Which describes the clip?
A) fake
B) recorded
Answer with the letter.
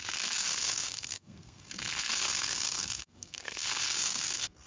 A